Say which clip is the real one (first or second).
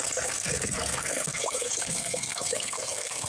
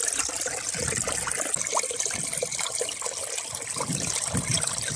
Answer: second